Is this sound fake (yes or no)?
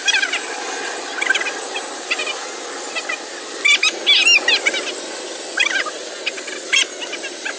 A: no